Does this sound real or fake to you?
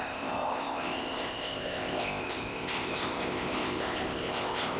fake